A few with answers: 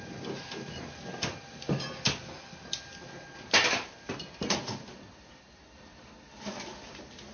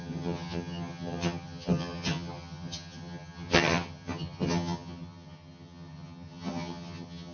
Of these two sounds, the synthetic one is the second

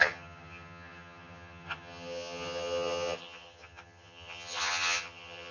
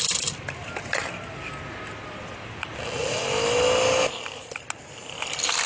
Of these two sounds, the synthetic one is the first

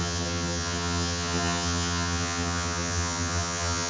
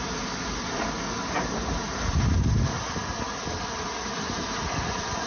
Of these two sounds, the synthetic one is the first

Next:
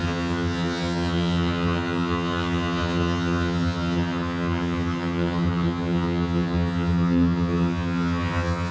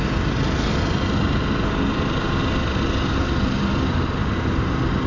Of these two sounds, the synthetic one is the first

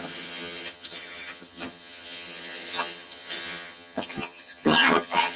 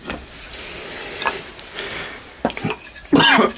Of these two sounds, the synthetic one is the first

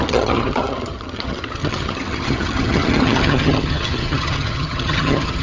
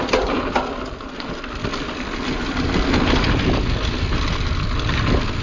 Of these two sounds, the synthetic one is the first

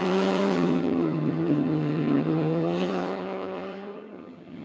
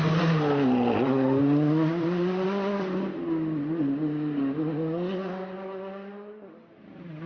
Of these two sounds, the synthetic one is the first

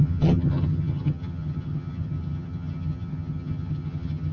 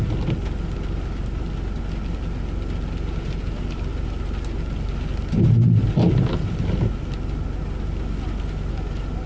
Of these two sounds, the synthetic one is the first